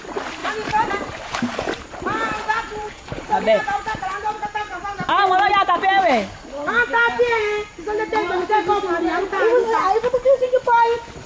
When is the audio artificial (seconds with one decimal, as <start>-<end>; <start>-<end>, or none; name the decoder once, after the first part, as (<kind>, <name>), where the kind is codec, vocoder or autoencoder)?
0.4-5.5 (vocoder, BigVGAN v2); 6.6-7.7